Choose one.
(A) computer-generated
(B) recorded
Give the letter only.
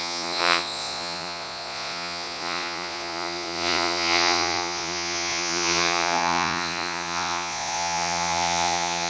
A